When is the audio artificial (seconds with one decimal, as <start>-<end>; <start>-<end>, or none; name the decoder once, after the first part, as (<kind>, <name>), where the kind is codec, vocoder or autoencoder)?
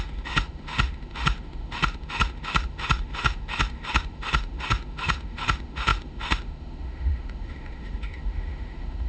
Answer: 0.0-9.1 (autoencoder, DAC-VAE)